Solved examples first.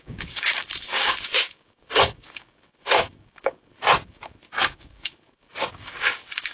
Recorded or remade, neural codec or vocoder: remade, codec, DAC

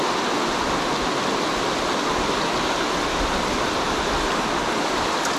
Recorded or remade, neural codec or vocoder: recorded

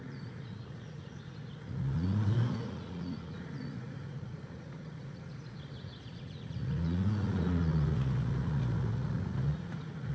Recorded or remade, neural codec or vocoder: remade, vocoder, Vocos